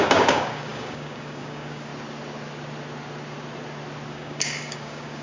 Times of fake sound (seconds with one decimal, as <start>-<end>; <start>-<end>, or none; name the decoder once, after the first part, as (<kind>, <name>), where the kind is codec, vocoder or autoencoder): 0.0-1.9 (codec, DAC); 4.1-5.2